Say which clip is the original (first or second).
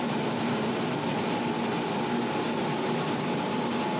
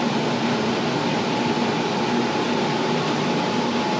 second